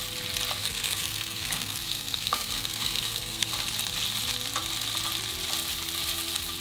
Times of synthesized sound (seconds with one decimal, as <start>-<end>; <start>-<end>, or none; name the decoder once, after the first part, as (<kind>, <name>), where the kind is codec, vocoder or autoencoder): 0.6-3.5 (codec, SNAC)